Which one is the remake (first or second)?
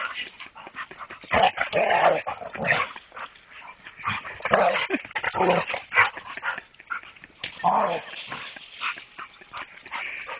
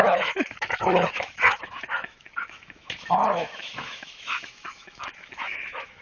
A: second